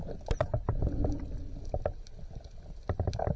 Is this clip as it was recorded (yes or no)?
yes